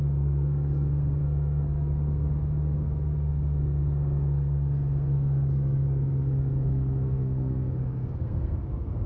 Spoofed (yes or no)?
yes